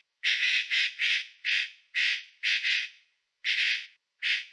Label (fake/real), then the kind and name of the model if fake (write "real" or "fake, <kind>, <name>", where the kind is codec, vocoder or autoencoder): fake, vocoder, Vocos